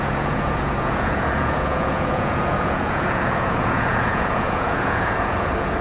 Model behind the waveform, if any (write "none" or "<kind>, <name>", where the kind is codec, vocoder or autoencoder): vocoder, Vocos